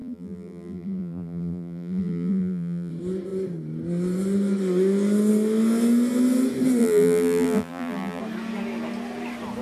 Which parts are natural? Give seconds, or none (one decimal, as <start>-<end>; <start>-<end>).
2.9-6.8; 8.2-9.6